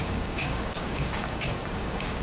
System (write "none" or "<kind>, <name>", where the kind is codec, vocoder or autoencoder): codec, DAC